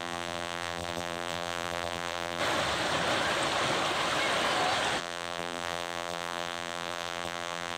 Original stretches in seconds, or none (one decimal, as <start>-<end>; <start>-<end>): 2.4-5.0